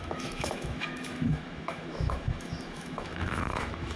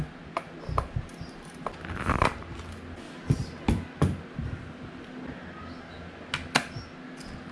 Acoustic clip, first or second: second